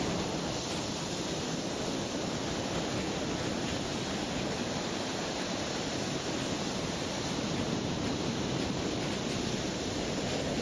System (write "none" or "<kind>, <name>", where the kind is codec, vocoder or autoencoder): vocoder, BigVGAN v2